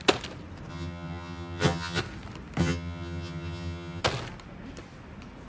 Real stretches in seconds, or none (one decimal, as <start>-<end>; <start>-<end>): 0.0-0.7; 2.0-2.6; 4.0-5.5